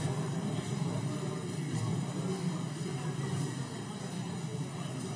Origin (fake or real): real